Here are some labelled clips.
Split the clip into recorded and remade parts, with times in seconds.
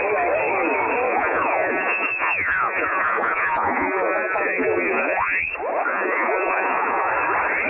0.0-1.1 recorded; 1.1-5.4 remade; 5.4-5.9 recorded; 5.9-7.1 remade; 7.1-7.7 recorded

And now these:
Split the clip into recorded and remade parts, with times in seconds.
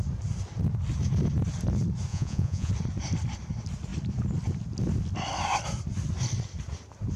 0.0-2.1 recorded; 2.1-2.7 remade; 2.7-7.2 recorded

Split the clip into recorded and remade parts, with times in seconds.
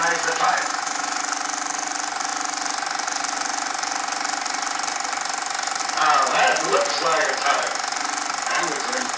0.0-0.5 recorded; 0.5-1.2 remade; 1.2-9.2 recorded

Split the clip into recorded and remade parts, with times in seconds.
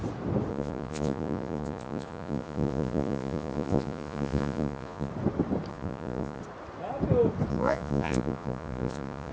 0.0-0.5 recorded; 0.5-5.1 remade; 5.1-5.7 recorded; 5.7-6.4 remade; 6.4-7.5 recorded; 7.5-9.3 remade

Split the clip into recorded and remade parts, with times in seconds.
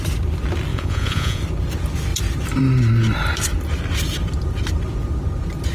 0.0-0.7 recorded; 0.7-1.4 remade; 1.4-5.7 recorded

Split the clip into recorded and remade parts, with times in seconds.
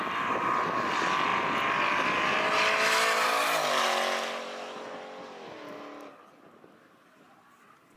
0.0-8.0 recorded